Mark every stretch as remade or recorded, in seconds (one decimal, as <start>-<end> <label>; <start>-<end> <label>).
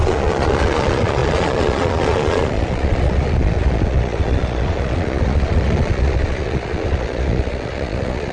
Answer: 0.0-8.3 remade